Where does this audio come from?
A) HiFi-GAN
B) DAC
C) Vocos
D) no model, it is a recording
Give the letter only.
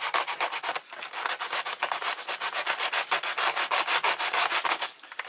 D